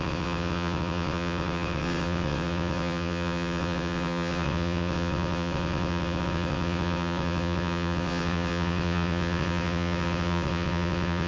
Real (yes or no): no